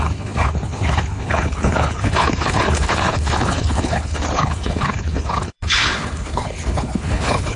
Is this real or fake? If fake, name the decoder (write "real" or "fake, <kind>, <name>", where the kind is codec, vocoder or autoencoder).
fake, codec, HILCodec